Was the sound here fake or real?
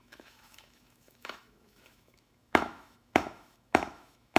fake